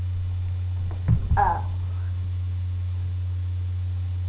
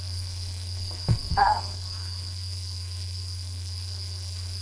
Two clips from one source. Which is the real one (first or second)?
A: first